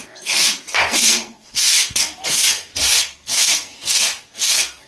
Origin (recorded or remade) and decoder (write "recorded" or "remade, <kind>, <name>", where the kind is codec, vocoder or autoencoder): remade, codec, SNAC